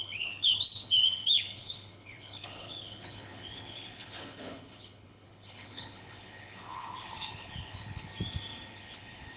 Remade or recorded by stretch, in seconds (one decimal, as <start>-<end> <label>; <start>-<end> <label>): 0.0-8.1 remade; 8.1-8.7 recorded; 8.7-9.4 remade